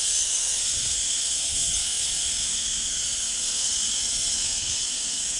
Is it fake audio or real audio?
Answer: fake